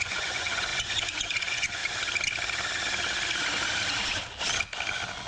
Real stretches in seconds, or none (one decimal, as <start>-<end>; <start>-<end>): 1.8-5.3